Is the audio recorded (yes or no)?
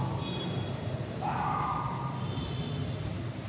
yes